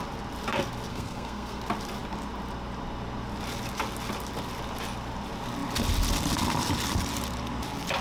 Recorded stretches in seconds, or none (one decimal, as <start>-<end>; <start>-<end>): 0.0-0.9; 1.6-8.0